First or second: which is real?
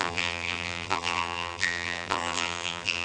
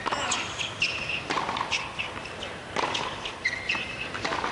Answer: second